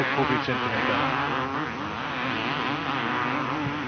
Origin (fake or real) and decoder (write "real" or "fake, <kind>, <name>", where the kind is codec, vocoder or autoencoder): real